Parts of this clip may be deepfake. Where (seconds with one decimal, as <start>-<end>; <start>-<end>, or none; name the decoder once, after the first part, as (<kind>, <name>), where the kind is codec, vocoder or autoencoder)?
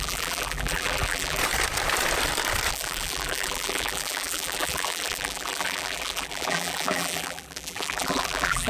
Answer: 0.0-1.4 (vocoder, BigVGAN v2); 2.7-8.7